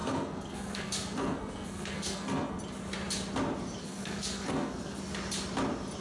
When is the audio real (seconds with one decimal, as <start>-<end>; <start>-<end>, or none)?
2.6-3.8; 5.0-6.0